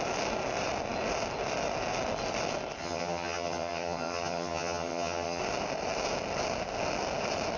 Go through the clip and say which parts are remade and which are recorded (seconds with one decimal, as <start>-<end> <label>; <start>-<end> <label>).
0.0-2.8 recorded; 2.8-5.4 remade; 5.4-7.6 recorded